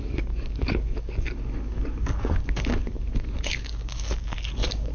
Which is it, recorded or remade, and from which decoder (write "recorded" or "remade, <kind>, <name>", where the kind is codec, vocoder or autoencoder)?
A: remade, codec, DAC